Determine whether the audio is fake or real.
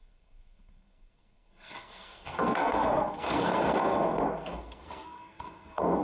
fake